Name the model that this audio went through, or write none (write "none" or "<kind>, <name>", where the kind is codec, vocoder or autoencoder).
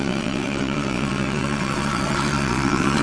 vocoder, WaveNeXt